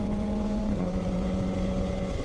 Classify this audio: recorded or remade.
remade